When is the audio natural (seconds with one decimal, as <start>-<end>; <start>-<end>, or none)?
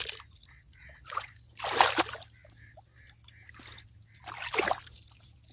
0.0-0.4; 1.3-5.5